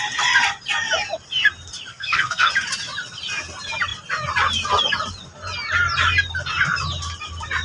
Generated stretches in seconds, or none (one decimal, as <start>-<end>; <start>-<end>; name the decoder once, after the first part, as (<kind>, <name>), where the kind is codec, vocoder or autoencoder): 1.9-2.5 (codec, SNAC)